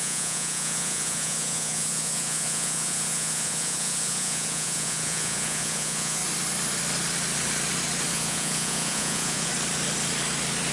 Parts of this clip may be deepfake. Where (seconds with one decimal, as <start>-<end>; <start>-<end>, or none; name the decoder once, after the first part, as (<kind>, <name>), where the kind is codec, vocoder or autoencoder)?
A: 0.0-6.2 (vocoder, Vocos); 8.1-9.5

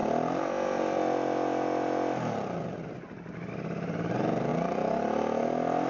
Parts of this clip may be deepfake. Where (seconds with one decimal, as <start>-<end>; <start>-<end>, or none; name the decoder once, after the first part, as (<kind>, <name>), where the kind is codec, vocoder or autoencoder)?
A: none

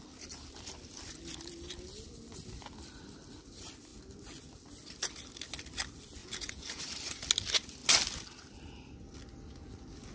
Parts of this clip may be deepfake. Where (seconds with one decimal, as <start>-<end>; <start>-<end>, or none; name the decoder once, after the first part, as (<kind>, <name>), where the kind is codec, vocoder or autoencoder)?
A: 6.2-6.8 (vocoder, Vocos)

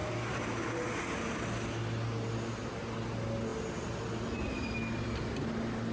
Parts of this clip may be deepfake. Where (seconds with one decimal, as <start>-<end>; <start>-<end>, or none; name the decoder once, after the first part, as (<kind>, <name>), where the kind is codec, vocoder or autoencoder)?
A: 0.0-0.8 (vocoder, BigVGAN v2)

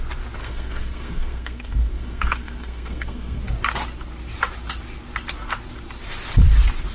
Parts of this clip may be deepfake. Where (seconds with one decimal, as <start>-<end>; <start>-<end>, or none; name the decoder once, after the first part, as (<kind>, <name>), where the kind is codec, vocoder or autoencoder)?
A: 0.4-3.4 (codec, SNAC)

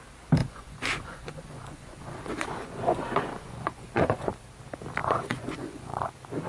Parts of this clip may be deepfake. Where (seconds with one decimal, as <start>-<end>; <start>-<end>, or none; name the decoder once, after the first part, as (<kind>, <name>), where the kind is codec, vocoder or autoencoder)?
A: 0.4-4.3 (vocoder, Vocos); 5.0-6.1

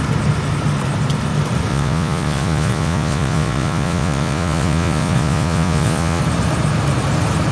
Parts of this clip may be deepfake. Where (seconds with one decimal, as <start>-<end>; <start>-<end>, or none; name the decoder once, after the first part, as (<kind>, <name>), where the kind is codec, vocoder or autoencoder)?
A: 1.7-6.2 (vocoder, Vocos)

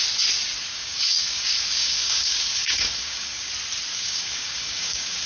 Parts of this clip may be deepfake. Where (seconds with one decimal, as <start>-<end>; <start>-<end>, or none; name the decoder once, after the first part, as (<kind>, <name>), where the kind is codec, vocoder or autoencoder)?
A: 0.7-3.5 (codec, DAC); 3.9-5.3